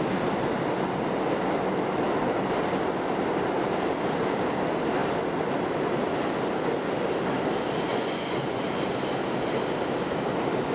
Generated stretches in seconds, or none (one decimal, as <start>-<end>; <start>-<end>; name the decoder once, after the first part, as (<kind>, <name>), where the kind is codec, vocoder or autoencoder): 7.9-8.6 (vocoder, Vocos)